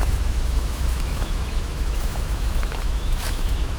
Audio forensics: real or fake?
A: fake